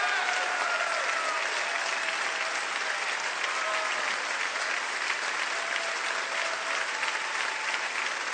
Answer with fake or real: real